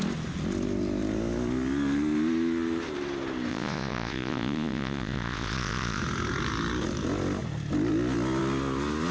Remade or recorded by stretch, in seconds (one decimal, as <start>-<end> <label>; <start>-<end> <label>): 0.0-3.5 recorded; 3.5-6.0 remade; 6.0-9.1 recorded